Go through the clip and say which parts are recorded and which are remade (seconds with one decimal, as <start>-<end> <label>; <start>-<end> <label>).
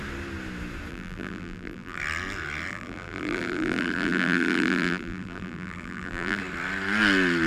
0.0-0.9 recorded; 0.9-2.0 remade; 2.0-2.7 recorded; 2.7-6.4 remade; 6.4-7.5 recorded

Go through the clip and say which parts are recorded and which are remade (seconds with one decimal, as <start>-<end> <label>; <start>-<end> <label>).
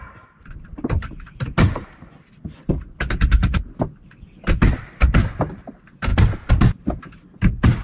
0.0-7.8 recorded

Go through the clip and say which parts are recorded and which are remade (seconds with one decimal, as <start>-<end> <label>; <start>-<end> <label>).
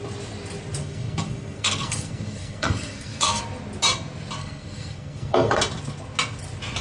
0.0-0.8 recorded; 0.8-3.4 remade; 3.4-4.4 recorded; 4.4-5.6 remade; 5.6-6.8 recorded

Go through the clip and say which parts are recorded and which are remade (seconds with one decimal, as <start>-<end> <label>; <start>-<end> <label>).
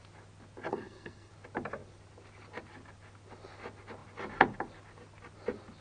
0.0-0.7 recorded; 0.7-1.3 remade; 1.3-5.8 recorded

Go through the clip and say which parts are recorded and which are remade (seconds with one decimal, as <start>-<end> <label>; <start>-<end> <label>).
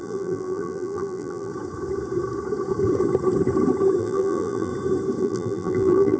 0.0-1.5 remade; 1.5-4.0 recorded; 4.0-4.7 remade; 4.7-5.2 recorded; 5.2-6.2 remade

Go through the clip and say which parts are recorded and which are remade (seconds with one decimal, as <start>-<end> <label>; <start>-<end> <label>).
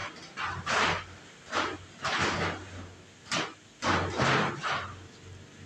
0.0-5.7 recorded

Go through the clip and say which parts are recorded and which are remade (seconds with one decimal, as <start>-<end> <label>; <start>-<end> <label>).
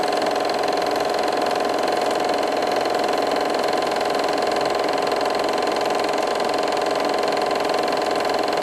0.0-8.6 recorded